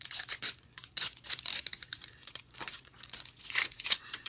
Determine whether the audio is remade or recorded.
remade